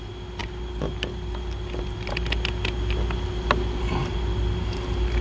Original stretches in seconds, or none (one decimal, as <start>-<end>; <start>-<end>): 0.0-5.2